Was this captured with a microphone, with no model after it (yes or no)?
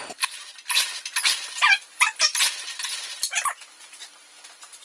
yes